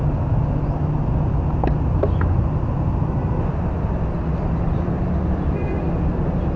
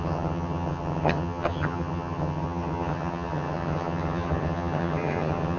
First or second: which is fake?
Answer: second